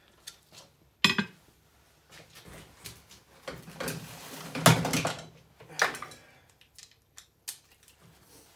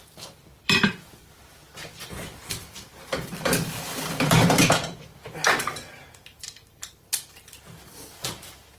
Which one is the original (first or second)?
first